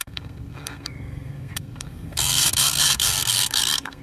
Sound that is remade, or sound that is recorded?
remade